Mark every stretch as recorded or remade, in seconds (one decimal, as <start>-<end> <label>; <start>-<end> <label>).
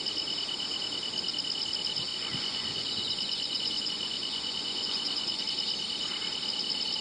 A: 0.0-2.1 recorded; 2.1-5.4 remade; 5.4-7.0 recorded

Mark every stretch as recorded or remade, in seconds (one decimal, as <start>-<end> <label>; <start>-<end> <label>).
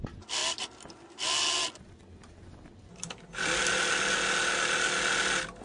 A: 0.0-5.6 recorded